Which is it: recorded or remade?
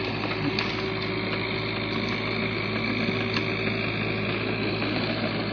recorded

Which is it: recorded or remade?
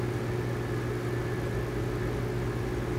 recorded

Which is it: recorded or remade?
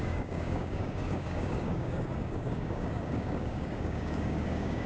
remade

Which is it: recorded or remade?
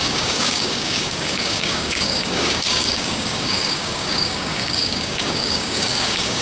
remade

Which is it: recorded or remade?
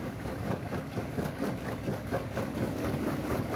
remade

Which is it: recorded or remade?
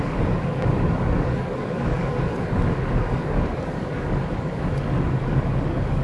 remade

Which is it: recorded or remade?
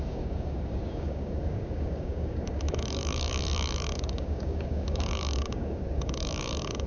remade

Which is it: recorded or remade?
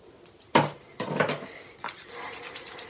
recorded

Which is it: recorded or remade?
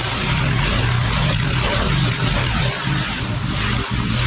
recorded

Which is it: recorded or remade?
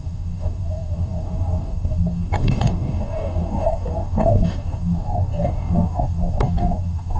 remade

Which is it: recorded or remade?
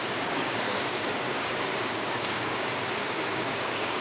remade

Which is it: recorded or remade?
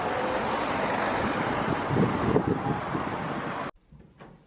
recorded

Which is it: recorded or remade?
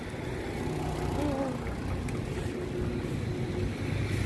recorded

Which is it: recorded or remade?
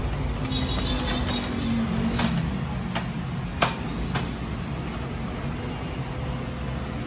recorded